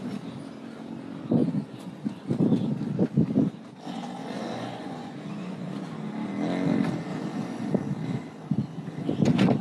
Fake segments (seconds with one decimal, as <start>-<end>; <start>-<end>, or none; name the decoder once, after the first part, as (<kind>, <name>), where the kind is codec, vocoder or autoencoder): 1.4-2.2 (vocoder, Vocos); 4.2-5.9; 7.1-7.7